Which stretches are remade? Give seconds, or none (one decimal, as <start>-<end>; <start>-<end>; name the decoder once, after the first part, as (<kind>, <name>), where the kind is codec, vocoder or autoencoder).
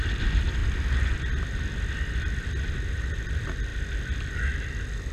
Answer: 0.0-0.6 (vocoder, BigVGAN v2); 2.9-3.7; 4.3-5.1